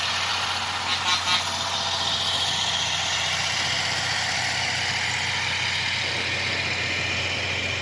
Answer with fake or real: real